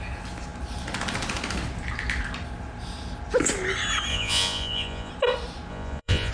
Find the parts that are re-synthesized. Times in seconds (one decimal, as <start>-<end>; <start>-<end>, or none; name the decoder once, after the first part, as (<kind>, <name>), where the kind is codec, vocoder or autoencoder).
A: 4.1-5.1 (vocoder, Vocos); 5.7-6.3